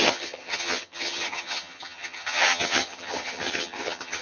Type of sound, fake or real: fake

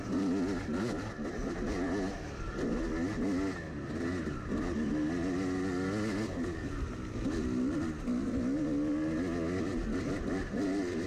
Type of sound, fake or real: real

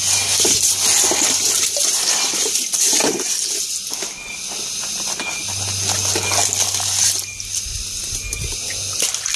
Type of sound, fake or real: real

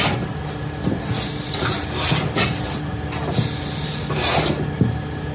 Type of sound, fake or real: real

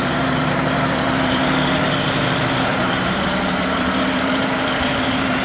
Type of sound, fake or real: fake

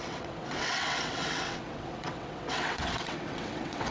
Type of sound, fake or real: fake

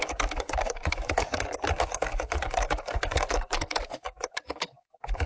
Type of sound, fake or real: fake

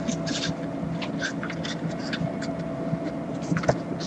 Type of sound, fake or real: real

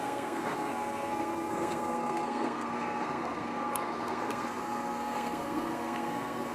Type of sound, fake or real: fake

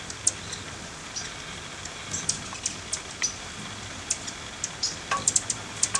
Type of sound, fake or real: real